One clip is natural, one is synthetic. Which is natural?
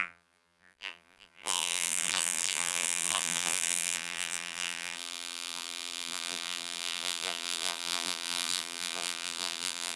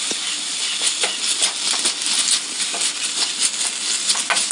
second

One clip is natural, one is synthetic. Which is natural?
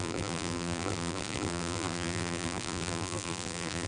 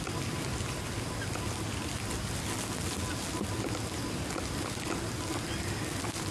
second